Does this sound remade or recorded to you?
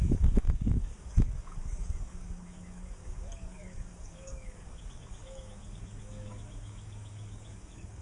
remade